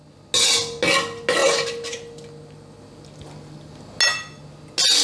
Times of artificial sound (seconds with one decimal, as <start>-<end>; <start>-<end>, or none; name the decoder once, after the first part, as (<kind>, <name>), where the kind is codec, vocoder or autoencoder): none